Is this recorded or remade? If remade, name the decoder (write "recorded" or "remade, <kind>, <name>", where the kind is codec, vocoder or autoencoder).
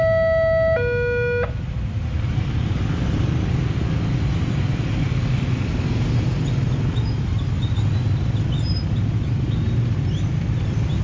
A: recorded